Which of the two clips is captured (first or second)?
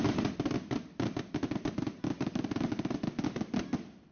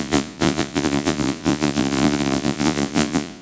first